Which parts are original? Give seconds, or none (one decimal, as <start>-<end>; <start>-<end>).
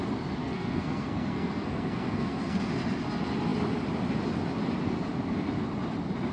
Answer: 0.0-0.4; 2.7-6.3